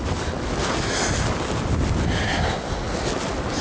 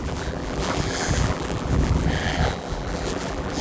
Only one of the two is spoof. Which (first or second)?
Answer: second